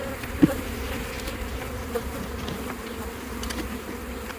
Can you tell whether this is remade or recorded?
recorded